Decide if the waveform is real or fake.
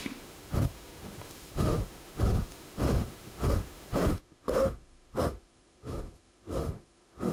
fake